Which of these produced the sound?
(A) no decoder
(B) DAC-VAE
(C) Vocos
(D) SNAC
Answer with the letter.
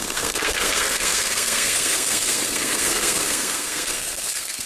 D